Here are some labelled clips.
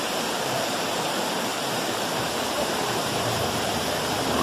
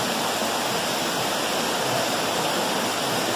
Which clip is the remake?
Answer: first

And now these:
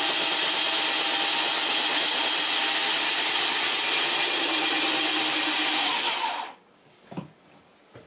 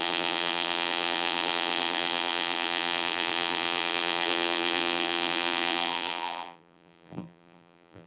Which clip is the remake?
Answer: second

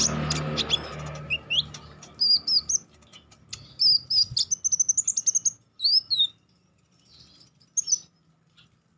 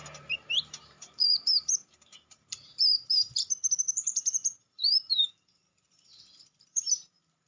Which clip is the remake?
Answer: second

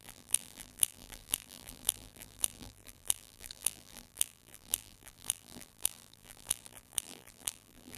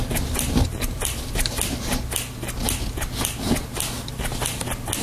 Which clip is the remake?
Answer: first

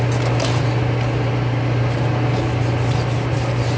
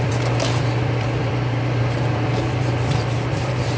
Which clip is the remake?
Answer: second